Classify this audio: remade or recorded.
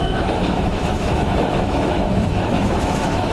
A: remade